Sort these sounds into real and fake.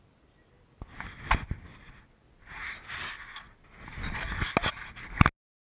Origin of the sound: real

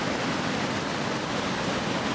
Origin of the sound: real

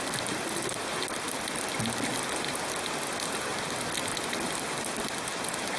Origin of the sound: real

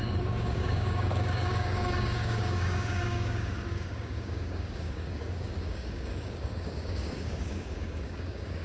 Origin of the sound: fake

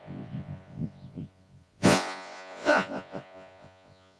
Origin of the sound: fake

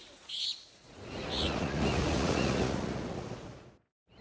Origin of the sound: fake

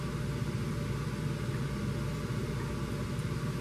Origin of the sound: real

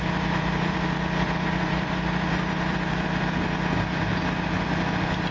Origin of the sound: fake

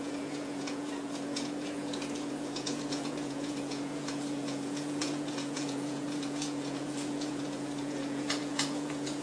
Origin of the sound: fake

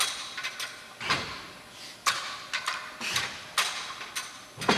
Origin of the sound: real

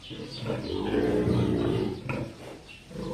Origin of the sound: real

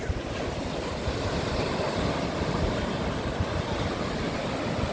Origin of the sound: real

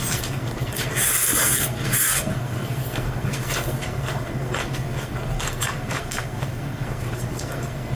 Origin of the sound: fake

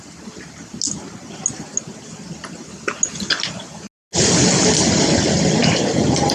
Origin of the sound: real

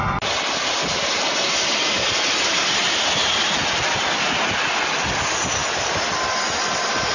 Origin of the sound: real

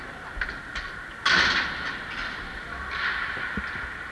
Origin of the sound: real